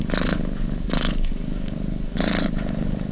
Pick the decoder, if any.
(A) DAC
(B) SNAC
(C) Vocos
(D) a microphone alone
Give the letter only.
A